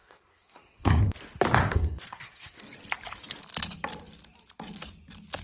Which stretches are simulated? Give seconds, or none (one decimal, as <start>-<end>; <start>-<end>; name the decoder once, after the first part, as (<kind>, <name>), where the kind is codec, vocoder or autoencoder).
0.0-1.0 (codec, SNAC); 1.6-2.6